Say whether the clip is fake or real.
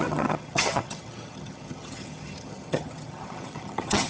fake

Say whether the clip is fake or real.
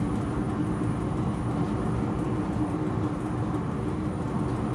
real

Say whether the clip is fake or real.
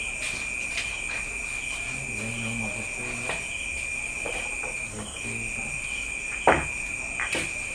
real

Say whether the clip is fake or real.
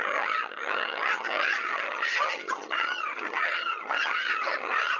fake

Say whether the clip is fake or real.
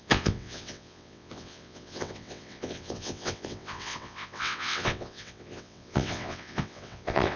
fake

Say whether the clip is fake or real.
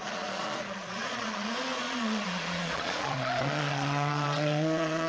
fake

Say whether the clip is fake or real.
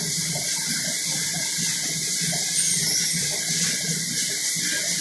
real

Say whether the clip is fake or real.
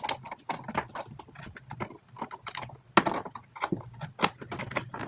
real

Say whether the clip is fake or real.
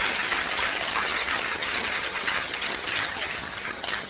fake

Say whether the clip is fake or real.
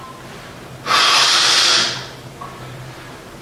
real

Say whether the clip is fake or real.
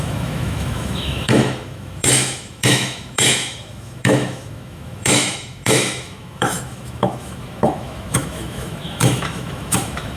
fake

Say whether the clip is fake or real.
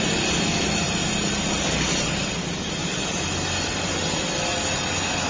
real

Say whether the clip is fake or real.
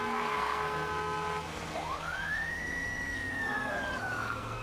fake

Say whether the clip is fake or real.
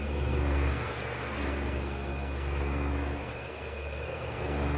fake